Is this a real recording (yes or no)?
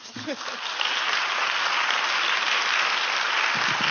yes